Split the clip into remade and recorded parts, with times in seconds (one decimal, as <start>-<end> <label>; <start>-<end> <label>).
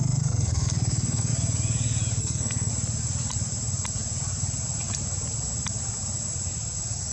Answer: 0.0-1.3 remade; 1.3-2.2 recorded; 2.2-2.7 remade; 2.7-7.1 recorded